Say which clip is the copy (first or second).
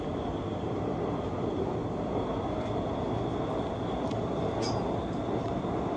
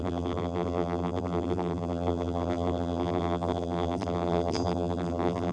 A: second